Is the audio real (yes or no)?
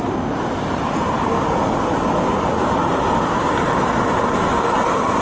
yes